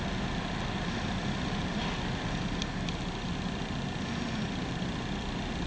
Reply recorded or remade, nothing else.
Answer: recorded